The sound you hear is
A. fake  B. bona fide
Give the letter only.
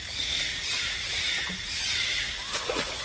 A